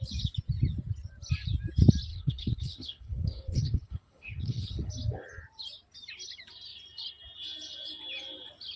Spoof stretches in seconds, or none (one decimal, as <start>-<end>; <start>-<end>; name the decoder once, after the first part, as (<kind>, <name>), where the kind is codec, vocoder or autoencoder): 2.1-4.9 (codec, HILCodec)